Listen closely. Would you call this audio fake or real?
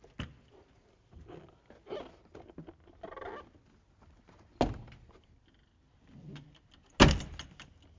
real